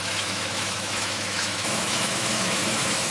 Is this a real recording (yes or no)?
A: no